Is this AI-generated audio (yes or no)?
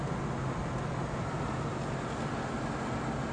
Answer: no